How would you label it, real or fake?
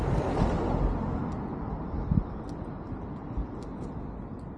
real